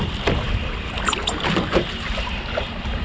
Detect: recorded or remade recorded